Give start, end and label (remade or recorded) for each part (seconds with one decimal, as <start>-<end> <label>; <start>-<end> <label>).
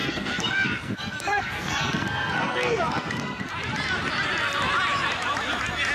0.0-3.5 remade; 3.5-5.9 recorded